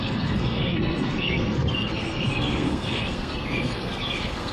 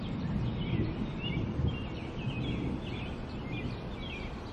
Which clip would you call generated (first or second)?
first